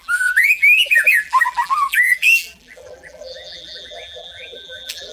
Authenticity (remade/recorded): remade